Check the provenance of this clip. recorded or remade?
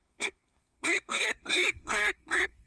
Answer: remade